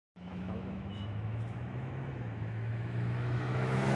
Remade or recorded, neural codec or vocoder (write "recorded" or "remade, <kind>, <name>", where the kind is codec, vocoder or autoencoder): remade, autoencoder, DAC-VAE